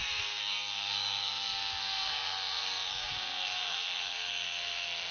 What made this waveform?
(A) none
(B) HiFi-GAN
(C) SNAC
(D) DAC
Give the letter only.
C